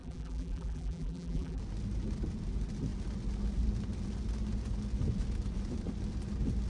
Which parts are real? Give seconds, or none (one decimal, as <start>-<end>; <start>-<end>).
1.6-6.7

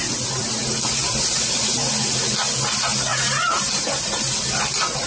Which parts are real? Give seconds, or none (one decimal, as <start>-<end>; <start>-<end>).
0.0-3.1; 4.2-5.1

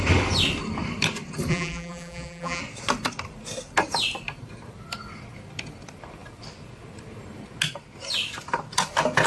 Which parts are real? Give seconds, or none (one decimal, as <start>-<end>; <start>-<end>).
0.0-1.5; 2.6-9.3

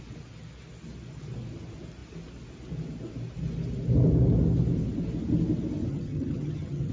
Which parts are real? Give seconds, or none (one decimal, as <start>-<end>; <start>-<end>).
0.0-5.9

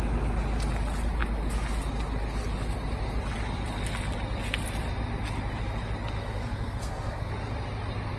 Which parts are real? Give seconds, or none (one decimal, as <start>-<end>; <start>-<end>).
0.0-6.2; 7.3-8.2

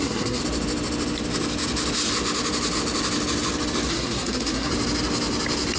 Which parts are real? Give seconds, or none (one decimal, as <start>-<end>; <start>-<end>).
0.4-3.9; 4.7-5.8